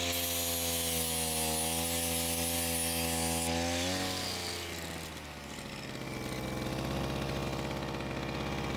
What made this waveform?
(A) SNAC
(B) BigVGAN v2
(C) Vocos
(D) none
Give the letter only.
D